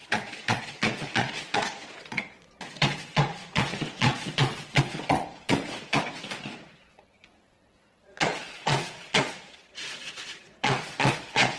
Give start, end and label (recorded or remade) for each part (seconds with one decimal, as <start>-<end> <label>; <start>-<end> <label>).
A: 0.0-11.6 remade